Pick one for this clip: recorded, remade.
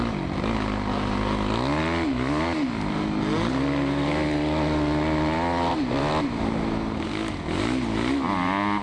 recorded